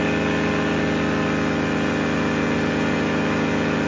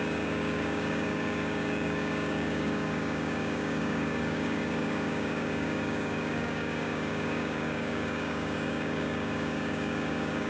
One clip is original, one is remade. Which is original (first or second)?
first